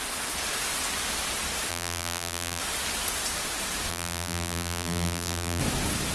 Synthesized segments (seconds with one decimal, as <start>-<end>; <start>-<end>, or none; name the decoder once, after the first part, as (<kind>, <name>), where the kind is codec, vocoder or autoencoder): 1.7-2.6 (vocoder, BigVGAN v2); 3.9-5.6